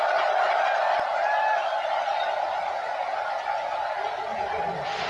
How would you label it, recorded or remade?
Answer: recorded